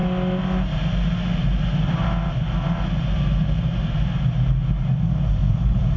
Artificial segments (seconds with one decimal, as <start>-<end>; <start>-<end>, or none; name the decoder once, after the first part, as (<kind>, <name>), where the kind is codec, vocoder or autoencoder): 5.4-6.0 (vocoder, BigVGAN v2)